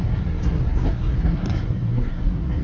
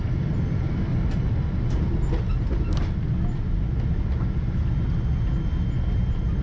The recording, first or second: second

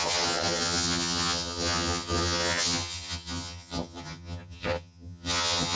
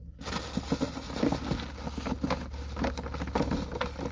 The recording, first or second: second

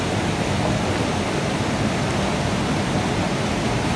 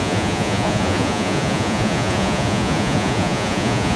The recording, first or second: first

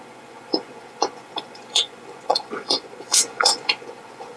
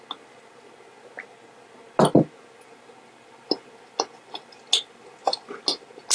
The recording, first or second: second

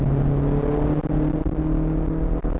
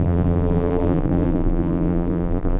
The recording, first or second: first